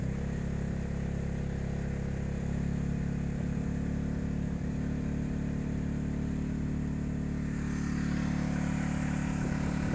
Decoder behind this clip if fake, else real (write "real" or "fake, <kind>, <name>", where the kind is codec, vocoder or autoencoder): real